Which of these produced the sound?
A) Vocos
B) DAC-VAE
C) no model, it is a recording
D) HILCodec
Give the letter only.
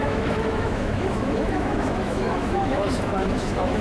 B